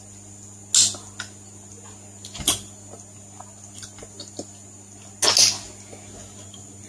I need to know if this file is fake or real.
real